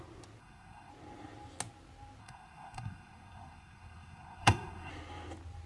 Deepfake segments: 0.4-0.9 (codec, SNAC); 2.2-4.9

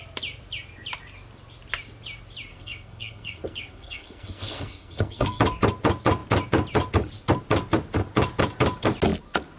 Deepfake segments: 2.5-5.4 (codec, SNAC)

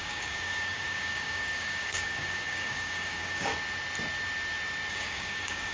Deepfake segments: 0.0-3.5 (codec, DAC); 4.9-5.7

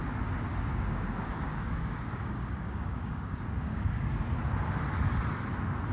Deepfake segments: 0.7-4.2 (codec, DAC)

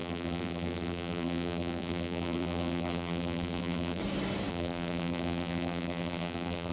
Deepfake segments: 0.0-4.0 (vocoder, BigVGAN v2); 4.5-6.7

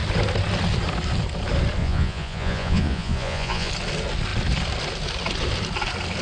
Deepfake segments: 1.8-3.7 (vocoder, Vocos)

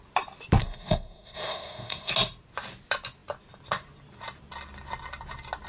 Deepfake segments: 0.6-2.1 (codec, SNAC)

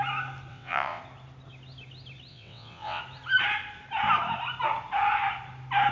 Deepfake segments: 0.5-1.0 (vocoder, WaveNeXt); 2.3-3.0